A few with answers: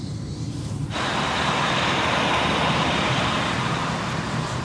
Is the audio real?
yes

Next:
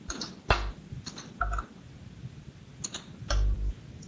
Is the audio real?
yes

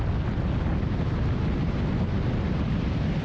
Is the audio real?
yes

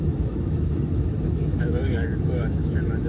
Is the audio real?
no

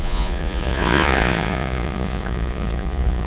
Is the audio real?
no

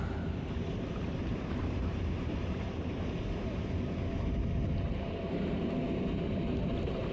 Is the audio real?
no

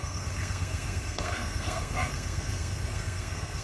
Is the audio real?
no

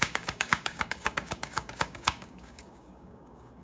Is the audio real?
no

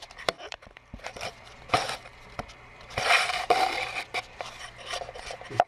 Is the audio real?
no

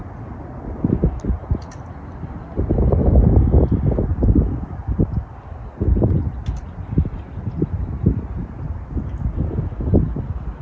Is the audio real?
yes